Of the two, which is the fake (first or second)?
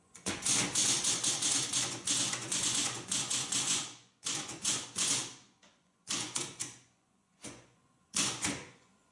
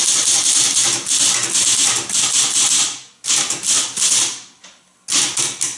first